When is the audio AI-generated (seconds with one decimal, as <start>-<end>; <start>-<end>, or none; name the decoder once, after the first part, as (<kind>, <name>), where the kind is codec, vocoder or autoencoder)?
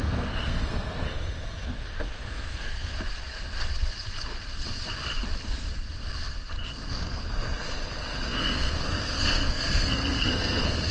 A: 0.0-2.9 (codec, SNAC); 6.9-10.9